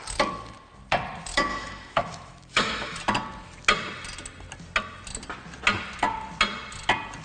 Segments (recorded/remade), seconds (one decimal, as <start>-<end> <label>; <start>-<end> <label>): 0.0-1.5 recorded; 1.5-3.0 remade; 3.0-7.2 recorded